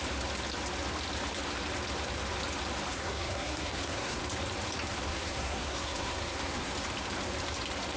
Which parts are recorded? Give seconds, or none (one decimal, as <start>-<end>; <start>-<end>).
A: 0.0-2.9; 4.2-5.1; 6.7-8.0